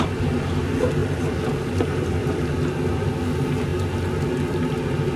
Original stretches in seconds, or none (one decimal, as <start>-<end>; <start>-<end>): 0.0-5.2